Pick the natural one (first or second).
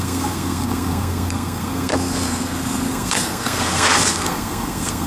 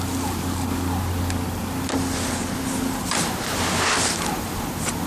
second